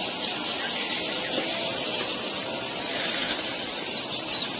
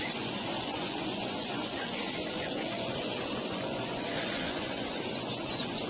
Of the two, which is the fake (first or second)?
second